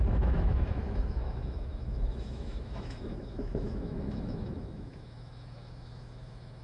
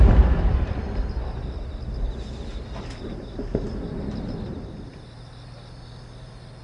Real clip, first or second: second